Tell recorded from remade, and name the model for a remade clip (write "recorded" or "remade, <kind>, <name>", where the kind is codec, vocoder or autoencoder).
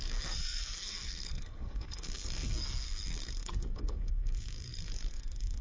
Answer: remade, codec, SNAC